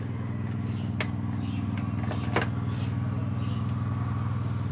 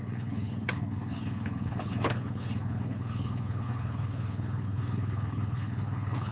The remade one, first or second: second